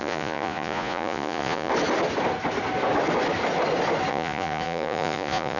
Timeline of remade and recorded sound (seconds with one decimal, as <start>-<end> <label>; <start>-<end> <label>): 0.0-1.7 remade; 1.7-4.1 recorded; 4.1-5.6 remade